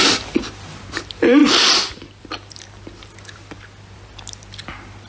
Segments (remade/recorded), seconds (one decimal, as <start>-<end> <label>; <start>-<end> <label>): 0.0-5.1 recorded